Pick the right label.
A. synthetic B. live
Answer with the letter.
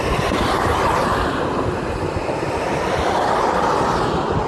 B